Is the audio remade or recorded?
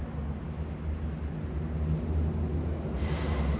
recorded